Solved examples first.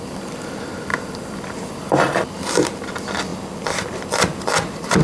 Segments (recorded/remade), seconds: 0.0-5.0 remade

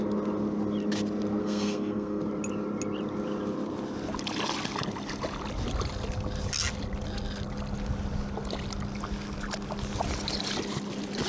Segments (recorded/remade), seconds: 0.0-1.4 recorded; 1.4-2.2 remade; 2.2-11.3 recorded

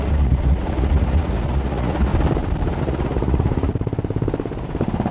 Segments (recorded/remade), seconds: 0.0-2.1 remade; 2.1-2.8 recorded; 2.8-3.7 remade; 3.7-5.1 recorded

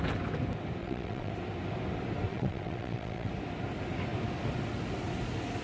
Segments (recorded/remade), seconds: 0.0-0.8 recorded; 0.8-1.3 remade; 1.3-2.3 recorded; 2.3-3.3 remade; 3.3-5.6 recorded

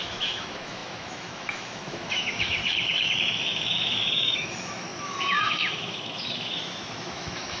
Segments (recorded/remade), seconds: 0.0-7.6 remade

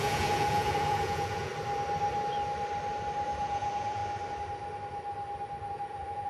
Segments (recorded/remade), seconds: 0.0-1.5 remade; 1.5-3.4 recorded; 3.4-4.0 remade; 4.0-5.7 recorded; 5.7-6.3 remade